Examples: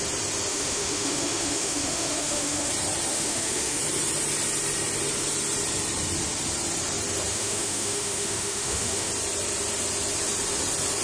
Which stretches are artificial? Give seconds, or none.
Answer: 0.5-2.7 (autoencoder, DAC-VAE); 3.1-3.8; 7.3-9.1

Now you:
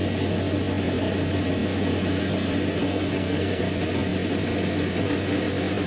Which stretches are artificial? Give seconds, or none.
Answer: 2.8-3.6 (codec, SNAC)

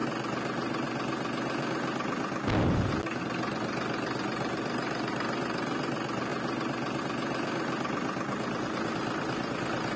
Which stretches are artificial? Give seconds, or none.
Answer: 3.2-6.3 (vocoder, BigVGAN v2); 7.0-10.0